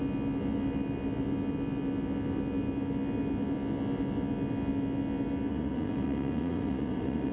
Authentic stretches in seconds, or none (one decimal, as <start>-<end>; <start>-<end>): 0.0-5.5